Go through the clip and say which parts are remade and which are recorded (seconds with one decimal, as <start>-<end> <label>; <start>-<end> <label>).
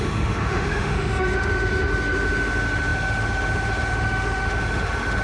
0.0-5.2 remade